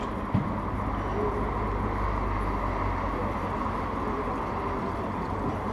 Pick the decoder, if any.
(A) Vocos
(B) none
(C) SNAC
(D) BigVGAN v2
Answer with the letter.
B